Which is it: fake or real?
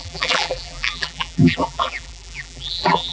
fake